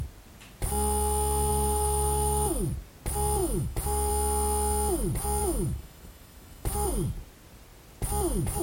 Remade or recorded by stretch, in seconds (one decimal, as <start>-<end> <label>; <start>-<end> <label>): 0.0-1.5 recorded; 1.5-2.5 remade; 2.5-3.4 recorded; 3.4-4.1 remade; 4.1-5.4 recorded; 5.4-6.9 remade; 6.9-8.6 recorded

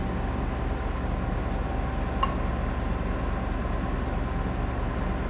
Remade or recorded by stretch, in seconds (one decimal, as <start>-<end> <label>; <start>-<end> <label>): 0.0-5.3 recorded